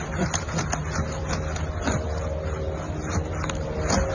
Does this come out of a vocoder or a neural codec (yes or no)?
no